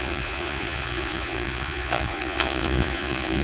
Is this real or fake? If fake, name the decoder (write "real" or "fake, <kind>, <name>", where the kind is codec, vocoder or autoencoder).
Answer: fake, vocoder, Vocos